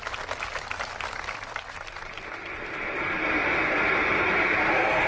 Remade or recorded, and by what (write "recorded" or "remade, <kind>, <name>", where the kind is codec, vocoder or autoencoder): recorded